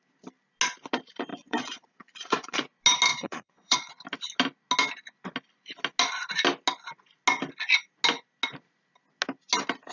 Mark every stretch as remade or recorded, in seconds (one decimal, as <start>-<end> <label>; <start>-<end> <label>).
0.0-1.3 recorded; 1.3-2.6 remade; 2.6-3.1 recorded; 3.1-3.9 remade; 3.9-9.9 recorded